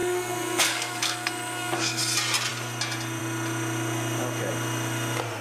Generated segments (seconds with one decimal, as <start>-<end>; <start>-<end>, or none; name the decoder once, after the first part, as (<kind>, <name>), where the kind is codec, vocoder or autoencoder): 0.0-2.0 (codec, SNAC)